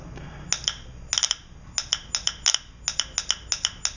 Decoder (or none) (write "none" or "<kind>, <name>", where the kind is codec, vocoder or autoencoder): none